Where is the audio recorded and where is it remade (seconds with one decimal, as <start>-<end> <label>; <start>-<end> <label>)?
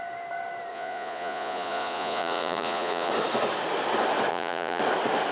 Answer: 0.0-0.7 recorded; 0.7-3.1 remade; 3.1-4.3 recorded; 4.3-4.8 remade; 4.8-5.3 recorded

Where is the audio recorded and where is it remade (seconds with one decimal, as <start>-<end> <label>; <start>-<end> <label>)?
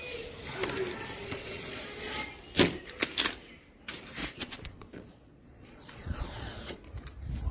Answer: 0.0-1.2 recorded; 1.2-1.8 remade; 1.8-4.2 recorded; 4.2-6.8 remade; 6.8-7.5 recorded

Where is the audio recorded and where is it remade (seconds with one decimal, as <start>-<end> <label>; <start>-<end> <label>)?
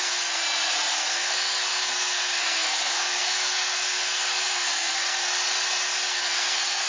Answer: 0.0-0.4 remade; 0.4-0.9 recorded; 0.9-5.2 remade; 5.2-6.1 recorded; 6.1-6.9 remade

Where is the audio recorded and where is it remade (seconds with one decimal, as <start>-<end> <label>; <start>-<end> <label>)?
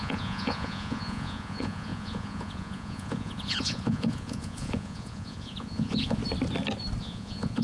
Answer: 0.0-6.2 remade; 6.2-7.0 recorded; 7.0-7.6 remade